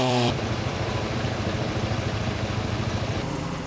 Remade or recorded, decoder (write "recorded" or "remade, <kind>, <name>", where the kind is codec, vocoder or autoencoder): remade, vocoder, BigVGAN v2